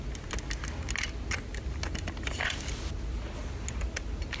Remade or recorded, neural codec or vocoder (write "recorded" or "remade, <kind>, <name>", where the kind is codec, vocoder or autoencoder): recorded